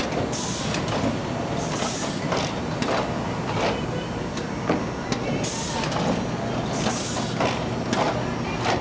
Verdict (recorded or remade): recorded